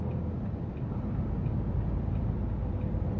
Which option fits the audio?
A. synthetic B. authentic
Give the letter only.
B